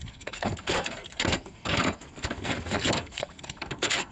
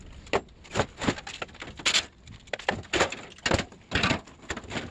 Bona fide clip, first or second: second